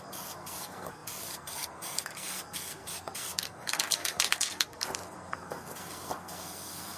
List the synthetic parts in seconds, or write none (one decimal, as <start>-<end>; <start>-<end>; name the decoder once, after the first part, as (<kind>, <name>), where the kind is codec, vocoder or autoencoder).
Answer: 0.0-7.0 (codec, SNAC)